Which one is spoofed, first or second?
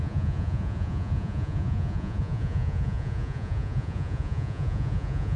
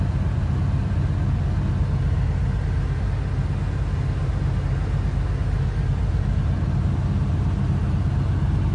first